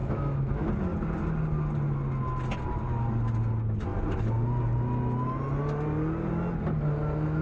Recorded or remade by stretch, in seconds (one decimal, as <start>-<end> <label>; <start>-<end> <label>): 0.0-0.7 remade; 0.7-7.4 recorded